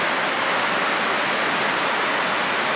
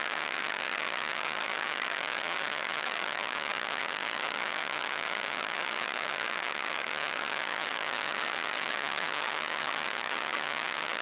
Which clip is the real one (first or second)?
first